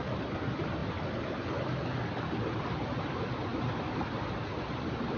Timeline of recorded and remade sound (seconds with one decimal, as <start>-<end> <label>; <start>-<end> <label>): 0.0-5.2 recorded